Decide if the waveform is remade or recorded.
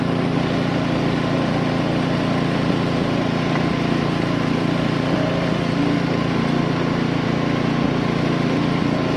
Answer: recorded